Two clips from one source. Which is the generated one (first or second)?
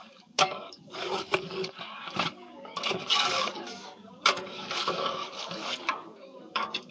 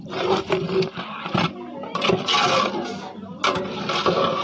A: first